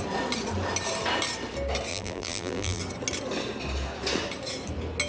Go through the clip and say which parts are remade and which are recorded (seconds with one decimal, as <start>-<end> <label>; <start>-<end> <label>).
0.0-1.9 recorded; 1.9-2.8 remade; 2.8-5.1 recorded